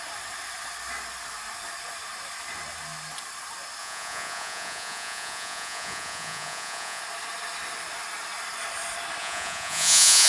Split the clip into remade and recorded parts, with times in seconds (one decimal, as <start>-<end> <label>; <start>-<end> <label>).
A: 0.0-3.8 recorded; 3.8-7.0 remade; 7.0-9.2 recorded; 9.2-10.3 remade